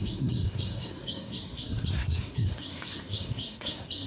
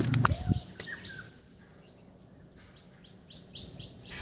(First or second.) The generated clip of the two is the first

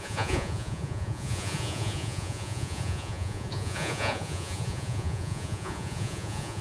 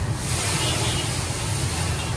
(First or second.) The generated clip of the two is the first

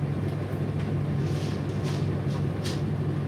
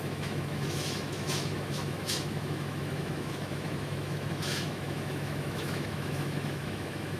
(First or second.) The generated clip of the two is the second